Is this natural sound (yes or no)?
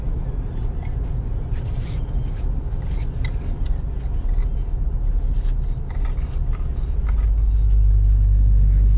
yes